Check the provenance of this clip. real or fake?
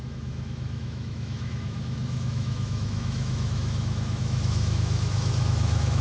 fake